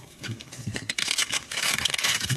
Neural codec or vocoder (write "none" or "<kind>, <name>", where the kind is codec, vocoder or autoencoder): codec, SNAC